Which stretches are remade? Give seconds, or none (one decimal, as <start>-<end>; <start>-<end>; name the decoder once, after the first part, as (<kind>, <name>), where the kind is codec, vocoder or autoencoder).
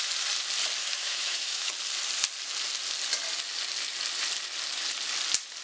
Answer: 0.8-1.7 (autoencoder, DAC-VAE)